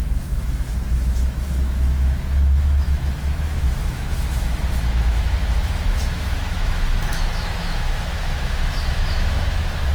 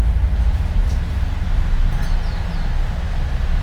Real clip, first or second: second